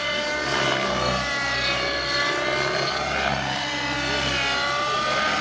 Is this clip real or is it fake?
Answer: real